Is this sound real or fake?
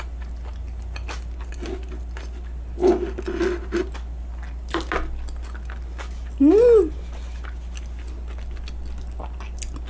real